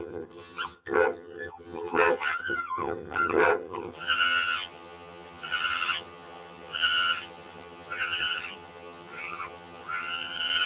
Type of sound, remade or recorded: remade